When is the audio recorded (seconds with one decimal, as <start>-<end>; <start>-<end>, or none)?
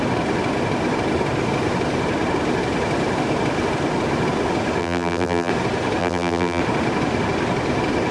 0.0-4.8; 5.5-6.0; 6.6-8.1